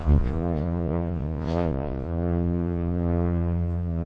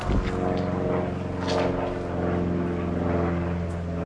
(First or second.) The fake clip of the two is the first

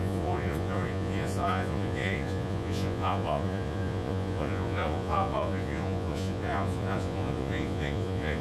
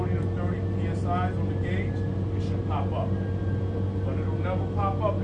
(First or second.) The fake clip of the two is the first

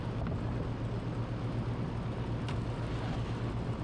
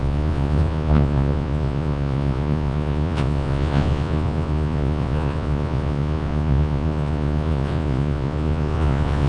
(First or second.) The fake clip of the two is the second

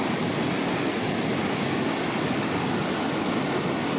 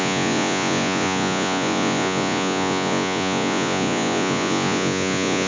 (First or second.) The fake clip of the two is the second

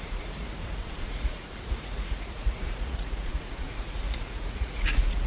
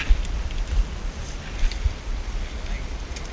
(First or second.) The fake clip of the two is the first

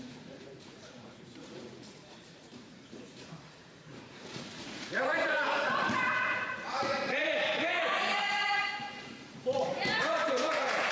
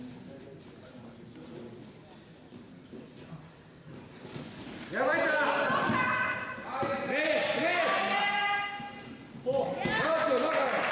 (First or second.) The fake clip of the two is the first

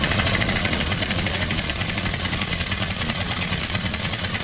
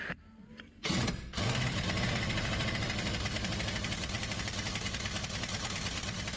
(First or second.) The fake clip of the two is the first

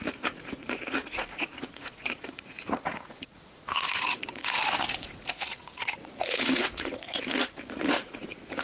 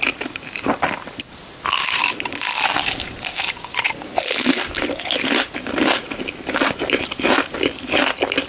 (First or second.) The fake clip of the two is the first